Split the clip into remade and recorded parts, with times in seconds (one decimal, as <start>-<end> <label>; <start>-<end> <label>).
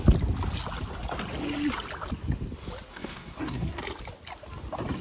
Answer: 0.0-2.9 recorded; 2.9-3.8 remade; 3.8-5.0 recorded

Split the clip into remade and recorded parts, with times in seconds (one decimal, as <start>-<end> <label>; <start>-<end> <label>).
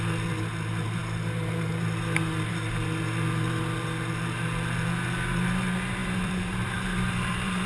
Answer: 0.0-6.0 recorded; 6.0-7.7 remade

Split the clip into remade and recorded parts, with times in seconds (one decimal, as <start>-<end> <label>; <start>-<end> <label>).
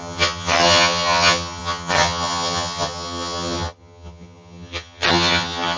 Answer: 0.0-5.8 remade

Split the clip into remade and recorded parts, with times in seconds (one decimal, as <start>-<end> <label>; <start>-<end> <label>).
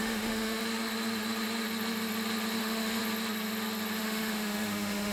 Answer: 0.0-0.6 remade; 0.6-2.6 recorded; 2.6-3.0 remade; 3.0-4.0 recorded; 4.0-5.1 remade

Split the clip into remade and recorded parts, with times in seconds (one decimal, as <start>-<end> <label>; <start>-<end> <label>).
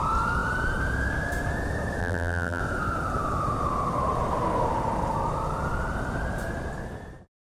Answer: 0.0-2.0 recorded; 2.0-2.6 remade; 2.6-7.5 recorded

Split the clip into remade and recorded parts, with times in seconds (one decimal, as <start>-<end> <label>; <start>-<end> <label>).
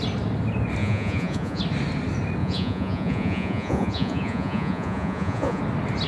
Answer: 0.0-0.8 recorded; 0.8-1.6 remade; 1.6-2.4 recorded; 2.4-5.6 remade; 5.6-6.1 recorded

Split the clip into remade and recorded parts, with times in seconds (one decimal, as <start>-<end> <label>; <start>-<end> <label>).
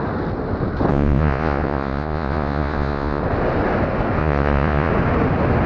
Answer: 0.0-0.9 recorded; 0.9-3.2 remade; 3.2-4.2 recorded; 4.2-4.9 remade; 4.9-5.7 recorded